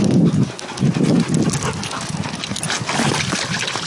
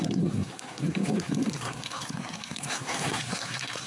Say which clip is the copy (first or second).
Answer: second